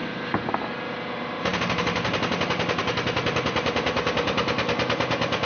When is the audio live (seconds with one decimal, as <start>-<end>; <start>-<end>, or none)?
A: 0.0-5.5